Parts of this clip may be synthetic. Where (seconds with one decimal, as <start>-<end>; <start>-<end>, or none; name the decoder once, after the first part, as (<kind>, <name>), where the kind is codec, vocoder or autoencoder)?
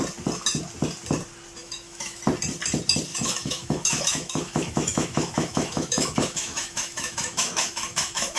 1.6-2.2 (autoencoder, DAC-VAE); 3.1-8.4